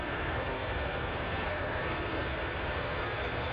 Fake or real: fake